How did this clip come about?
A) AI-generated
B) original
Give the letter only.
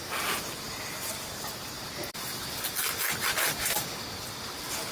B